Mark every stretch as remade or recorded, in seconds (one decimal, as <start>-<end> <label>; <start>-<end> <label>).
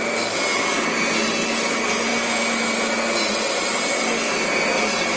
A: 0.0-5.2 recorded